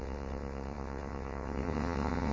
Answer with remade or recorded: remade